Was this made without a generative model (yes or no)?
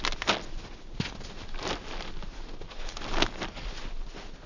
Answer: yes